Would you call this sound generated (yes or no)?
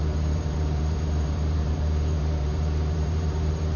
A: yes